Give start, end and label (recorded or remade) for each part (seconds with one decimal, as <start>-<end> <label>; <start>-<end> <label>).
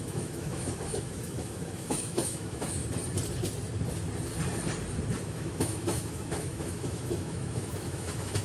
0.0-2.8 remade; 2.8-5.2 recorded; 5.2-8.4 remade